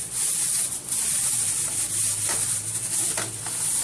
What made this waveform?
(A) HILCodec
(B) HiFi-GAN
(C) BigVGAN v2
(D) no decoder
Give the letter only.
D